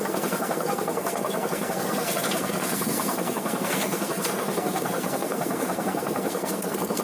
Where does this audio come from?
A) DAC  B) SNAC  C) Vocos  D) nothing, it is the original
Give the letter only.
B